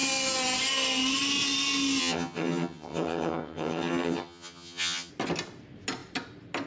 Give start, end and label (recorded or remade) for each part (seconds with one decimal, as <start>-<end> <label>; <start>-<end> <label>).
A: 0.0-2.0 recorded; 2.0-5.1 remade; 5.1-6.7 recorded